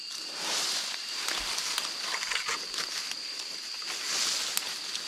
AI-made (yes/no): no